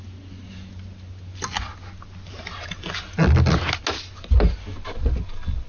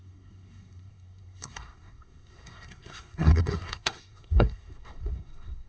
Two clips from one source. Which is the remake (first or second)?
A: second